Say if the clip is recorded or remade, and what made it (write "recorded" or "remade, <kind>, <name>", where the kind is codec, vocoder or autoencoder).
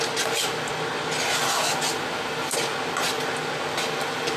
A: recorded